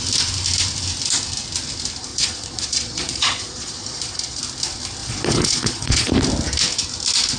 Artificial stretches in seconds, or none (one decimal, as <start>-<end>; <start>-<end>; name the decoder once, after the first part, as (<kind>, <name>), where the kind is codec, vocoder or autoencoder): 2.1-4.4 (vocoder, Vocos); 5.0-6.1